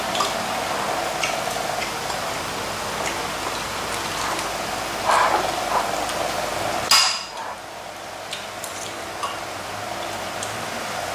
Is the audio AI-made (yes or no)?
no